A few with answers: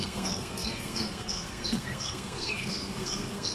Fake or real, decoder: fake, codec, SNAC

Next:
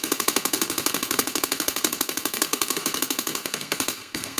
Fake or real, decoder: fake, codec, SNAC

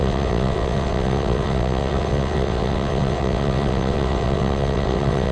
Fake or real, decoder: fake, vocoder, WaveNeXt